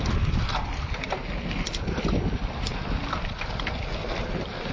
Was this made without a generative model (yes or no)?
no